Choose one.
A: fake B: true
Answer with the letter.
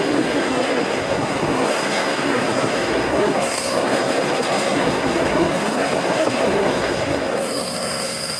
A